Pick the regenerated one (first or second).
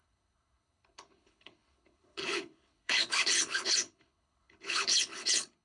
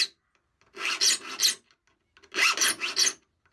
first